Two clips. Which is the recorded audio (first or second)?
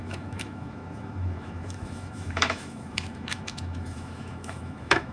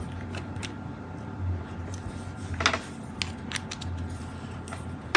second